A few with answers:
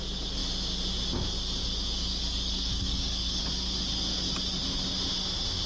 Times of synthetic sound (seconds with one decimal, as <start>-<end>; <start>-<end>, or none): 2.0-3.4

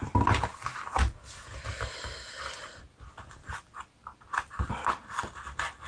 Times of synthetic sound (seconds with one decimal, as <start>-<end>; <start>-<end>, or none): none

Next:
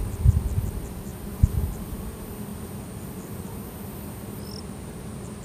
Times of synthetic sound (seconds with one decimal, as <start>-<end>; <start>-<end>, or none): none

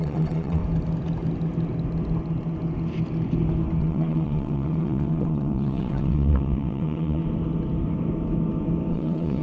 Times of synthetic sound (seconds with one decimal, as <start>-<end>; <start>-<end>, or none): 0.0-0.6; 3.8-7.2; 8.9-9.4